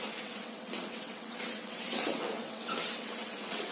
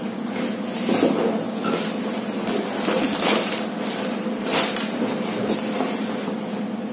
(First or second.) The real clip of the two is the second